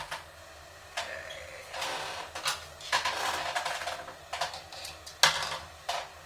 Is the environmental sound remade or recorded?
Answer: recorded